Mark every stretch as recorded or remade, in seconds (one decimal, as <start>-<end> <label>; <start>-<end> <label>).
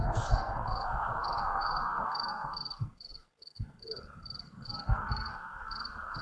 0.0-6.2 remade